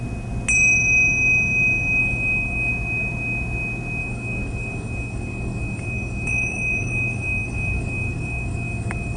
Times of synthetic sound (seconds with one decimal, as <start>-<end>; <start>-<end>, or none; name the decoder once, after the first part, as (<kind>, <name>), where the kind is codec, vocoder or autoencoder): 2.0-2.7 (codec, DAC); 4.0-9.2